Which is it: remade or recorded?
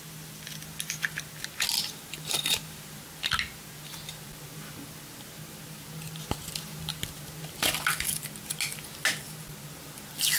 recorded